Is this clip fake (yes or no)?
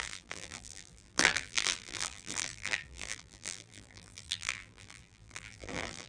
yes